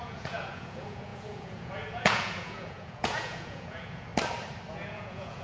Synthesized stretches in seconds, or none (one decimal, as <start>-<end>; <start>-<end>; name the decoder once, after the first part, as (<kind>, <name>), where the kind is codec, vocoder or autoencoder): 0.0-4.1 (vocoder, Vocos); 4.7-5.4